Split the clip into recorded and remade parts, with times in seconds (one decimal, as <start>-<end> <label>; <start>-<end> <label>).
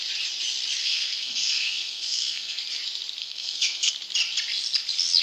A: 0.0-0.8 recorded; 0.8-2.6 remade; 2.6-3.2 recorded; 3.2-3.9 remade; 3.9-5.2 recorded